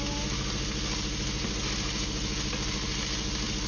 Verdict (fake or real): real